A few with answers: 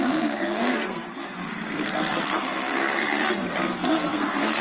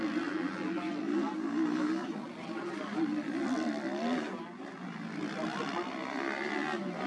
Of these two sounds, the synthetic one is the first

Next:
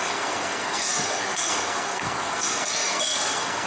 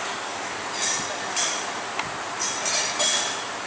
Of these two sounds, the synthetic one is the first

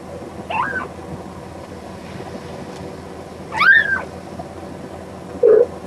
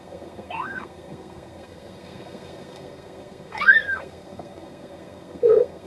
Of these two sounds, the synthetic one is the second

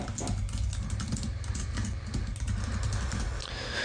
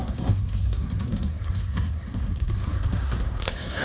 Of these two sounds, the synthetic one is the second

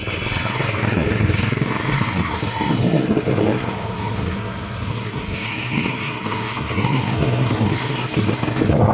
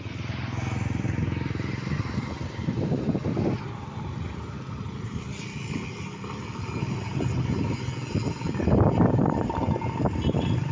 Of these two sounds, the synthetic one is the first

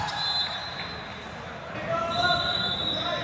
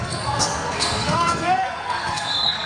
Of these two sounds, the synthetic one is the second